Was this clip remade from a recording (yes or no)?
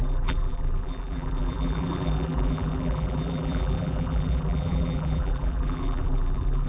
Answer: yes